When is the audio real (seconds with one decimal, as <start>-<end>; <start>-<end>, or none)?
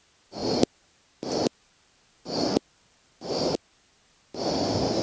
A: 0.0-0.4; 3.4-5.0